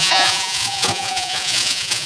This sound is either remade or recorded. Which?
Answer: remade